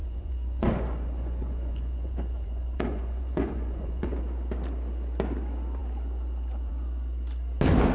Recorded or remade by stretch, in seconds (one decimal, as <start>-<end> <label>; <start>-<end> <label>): 0.0-4.2 remade; 4.2-7.9 recorded